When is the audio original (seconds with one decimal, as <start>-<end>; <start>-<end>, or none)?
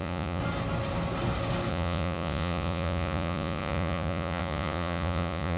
0.4-1.7